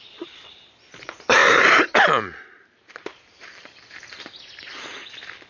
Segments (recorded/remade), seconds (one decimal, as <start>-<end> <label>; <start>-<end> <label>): 0.0-1.4 recorded; 1.4-4.4 remade; 4.4-5.5 recorded